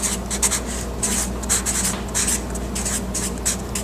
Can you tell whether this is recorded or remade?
recorded